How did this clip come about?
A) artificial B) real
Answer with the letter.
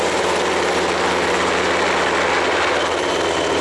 B